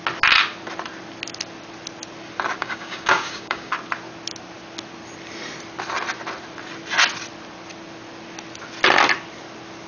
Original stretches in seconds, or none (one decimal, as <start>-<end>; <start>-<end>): 0.0-2.6; 3.7-9.9